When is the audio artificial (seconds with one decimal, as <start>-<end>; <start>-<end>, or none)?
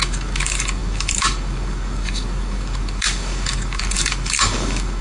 0.0-5.0